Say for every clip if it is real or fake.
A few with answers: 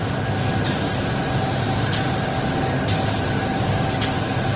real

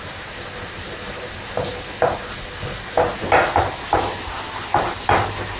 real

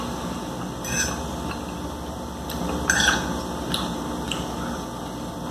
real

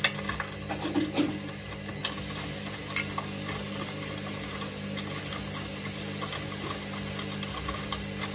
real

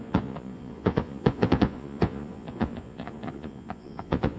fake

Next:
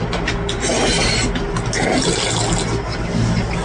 real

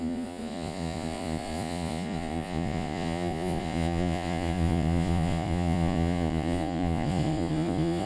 fake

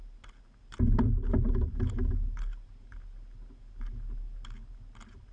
real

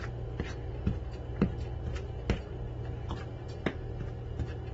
real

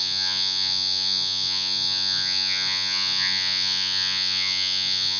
fake